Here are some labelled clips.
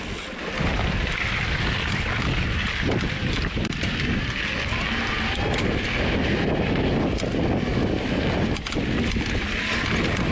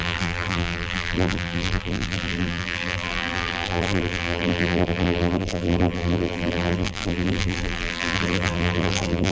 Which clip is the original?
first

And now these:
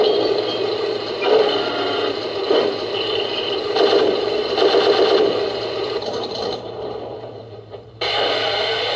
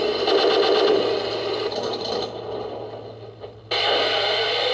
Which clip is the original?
second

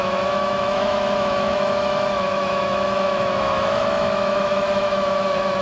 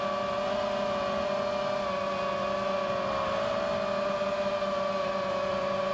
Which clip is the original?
second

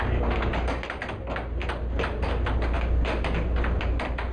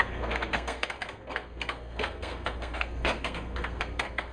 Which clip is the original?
first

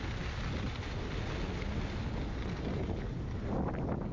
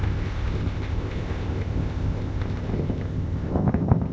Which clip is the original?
first